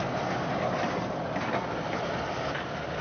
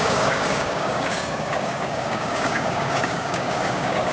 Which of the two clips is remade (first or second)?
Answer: second